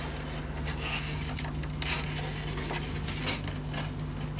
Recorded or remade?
recorded